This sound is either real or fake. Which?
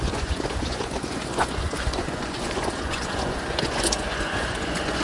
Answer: fake